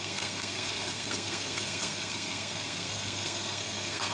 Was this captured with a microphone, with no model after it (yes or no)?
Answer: no